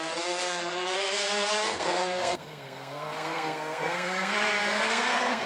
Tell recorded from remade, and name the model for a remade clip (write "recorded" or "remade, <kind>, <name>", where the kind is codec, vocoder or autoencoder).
remade, codec, SNAC